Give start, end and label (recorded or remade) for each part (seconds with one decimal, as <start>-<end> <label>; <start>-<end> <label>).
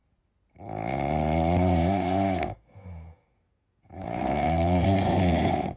0.0-4.2 recorded; 4.2-5.8 remade